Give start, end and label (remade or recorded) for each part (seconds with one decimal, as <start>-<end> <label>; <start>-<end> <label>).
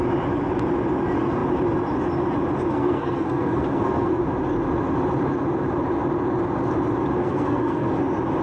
0.0-2.7 recorded; 2.7-4.2 remade; 4.2-7.2 recorded; 7.2-7.9 remade; 7.9-8.4 recorded